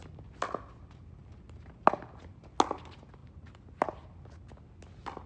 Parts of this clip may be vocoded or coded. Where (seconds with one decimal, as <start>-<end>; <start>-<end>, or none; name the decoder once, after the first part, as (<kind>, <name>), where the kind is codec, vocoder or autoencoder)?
none